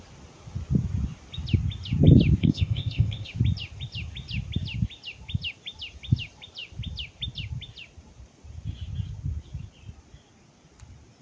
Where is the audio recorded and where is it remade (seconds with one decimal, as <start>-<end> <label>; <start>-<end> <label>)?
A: 0.0-2.4 recorded; 2.4-3.3 remade; 3.3-11.2 recorded